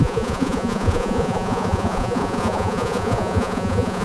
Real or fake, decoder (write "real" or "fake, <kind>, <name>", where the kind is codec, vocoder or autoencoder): fake, vocoder, Vocos